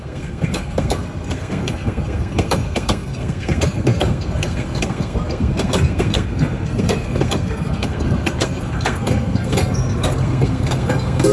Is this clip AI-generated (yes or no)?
yes